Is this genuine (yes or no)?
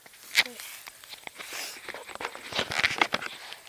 yes